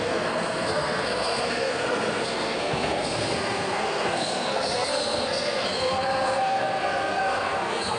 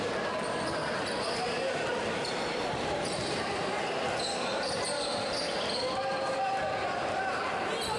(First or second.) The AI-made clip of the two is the first